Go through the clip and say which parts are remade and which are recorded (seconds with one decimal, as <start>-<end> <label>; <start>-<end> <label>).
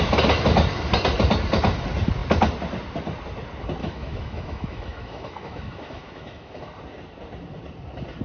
0.0-3.8 recorded; 3.8-6.6 remade; 6.6-8.2 recorded